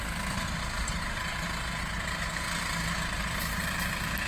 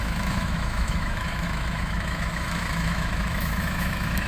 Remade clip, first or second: second